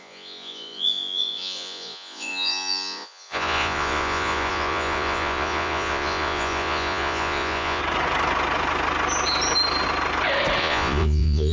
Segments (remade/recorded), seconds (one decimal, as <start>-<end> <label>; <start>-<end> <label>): 0.0-7.8 remade; 7.8-10.6 recorded; 10.6-11.5 remade